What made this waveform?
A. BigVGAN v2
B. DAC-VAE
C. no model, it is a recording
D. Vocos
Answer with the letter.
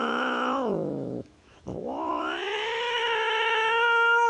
B